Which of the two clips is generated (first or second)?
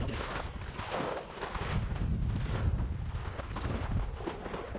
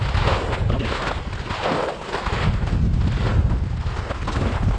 first